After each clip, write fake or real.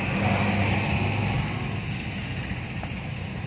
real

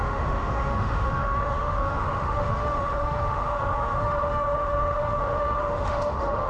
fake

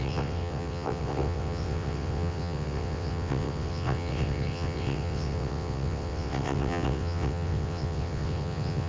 fake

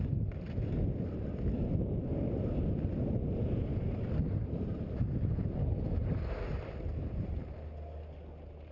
real